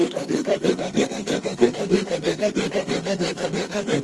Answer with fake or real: fake